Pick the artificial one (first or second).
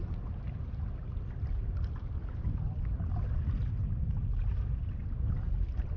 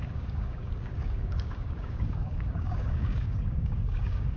second